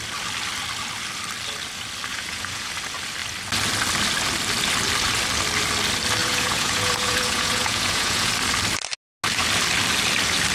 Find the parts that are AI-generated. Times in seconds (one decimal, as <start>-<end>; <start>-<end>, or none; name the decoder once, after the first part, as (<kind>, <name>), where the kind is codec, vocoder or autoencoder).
2.1-2.7 (vocoder, Vocos); 6.2-8.3